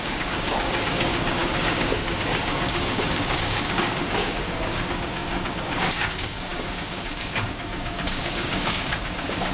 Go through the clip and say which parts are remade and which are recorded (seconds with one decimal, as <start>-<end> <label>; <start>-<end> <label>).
0.0-9.5 remade